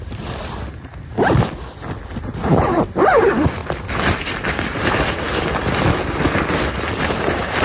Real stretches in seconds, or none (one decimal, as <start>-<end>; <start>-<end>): 0.9-2.5; 3.6-7.0